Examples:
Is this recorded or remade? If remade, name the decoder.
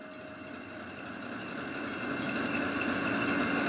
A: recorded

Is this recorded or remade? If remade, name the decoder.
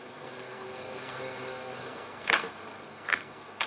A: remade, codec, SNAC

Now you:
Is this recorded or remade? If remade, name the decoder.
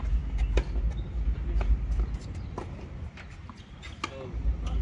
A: recorded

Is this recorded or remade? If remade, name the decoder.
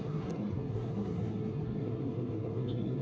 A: remade, codec, SNAC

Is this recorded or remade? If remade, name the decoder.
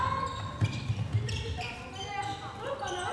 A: recorded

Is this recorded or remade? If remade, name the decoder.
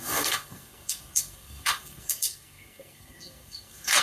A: remade, codec, SNAC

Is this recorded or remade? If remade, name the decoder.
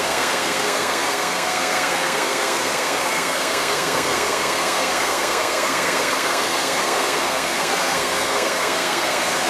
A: remade, codec, SNAC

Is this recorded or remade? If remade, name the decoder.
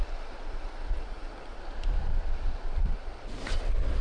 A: recorded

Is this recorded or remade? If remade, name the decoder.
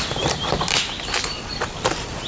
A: recorded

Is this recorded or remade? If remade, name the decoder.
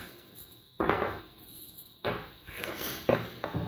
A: remade, codec, SNAC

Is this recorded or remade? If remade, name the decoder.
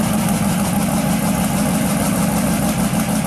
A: recorded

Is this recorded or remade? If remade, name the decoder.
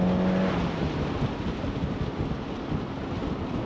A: recorded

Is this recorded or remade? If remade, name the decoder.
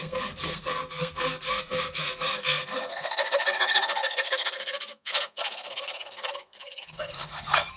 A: remade, codec, SNAC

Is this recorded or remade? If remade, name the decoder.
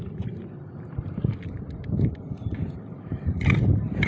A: recorded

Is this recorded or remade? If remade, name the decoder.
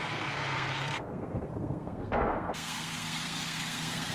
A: remade, codec, SNAC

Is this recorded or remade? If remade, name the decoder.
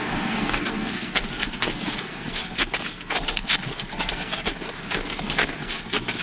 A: remade, codec, SNAC